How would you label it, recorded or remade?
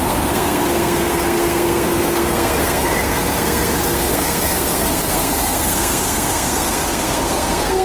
remade